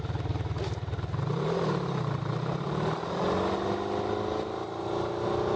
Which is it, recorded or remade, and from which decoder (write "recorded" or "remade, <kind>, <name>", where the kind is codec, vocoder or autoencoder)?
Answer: recorded